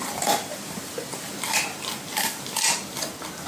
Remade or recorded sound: recorded